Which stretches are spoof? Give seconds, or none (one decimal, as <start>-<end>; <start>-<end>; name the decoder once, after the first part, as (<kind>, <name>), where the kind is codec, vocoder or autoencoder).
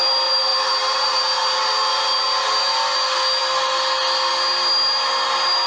none